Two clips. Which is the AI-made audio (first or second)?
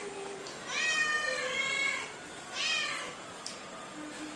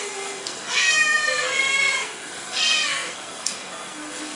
second